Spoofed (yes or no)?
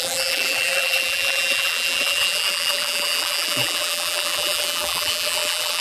yes